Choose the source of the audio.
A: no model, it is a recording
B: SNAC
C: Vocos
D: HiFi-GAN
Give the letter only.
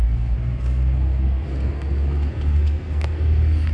B